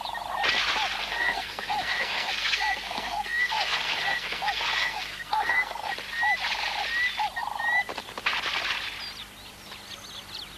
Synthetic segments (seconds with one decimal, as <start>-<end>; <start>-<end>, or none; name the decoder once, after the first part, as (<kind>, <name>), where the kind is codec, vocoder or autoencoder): 1.0-5.9 (codec, SNAC)